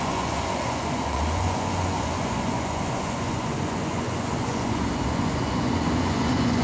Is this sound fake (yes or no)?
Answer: yes